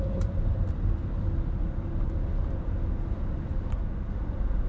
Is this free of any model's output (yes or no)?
yes